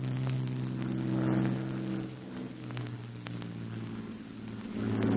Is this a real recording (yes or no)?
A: yes